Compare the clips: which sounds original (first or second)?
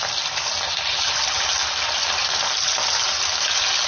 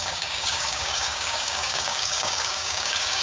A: first